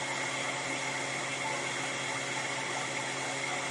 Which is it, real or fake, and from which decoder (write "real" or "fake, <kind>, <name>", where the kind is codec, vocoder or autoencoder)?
real